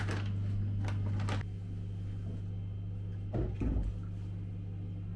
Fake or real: real